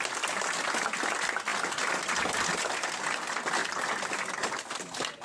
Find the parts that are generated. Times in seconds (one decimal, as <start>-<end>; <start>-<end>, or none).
none